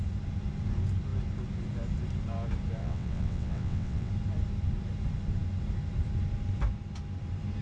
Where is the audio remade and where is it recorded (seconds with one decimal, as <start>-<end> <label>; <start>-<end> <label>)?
0.0-2.8 recorded; 2.8-4.1 remade; 4.1-7.6 recorded